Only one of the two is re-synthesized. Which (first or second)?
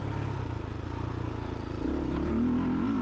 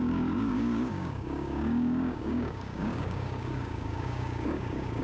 second